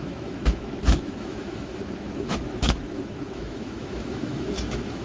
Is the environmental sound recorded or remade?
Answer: remade